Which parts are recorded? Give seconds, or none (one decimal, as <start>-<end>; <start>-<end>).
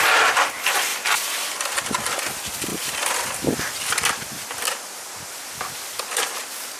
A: 0.0-0.9; 1.8-2.7; 5.4-6.8